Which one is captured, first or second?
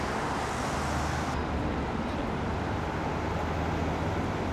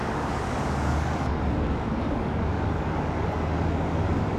first